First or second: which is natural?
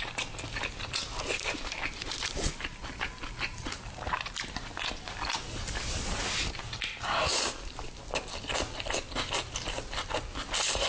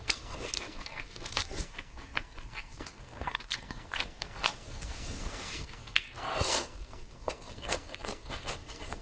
first